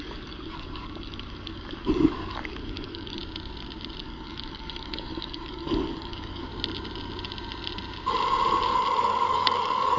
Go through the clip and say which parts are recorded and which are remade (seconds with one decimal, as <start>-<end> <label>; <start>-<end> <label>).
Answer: 0.0-3.2 remade; 3.2-4.0 recorded; 4.0-6.5 remade; 6.5-9.0 recorded; 9.0-10.0 remade